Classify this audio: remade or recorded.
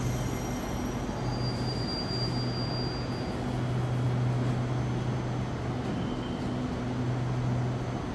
recorded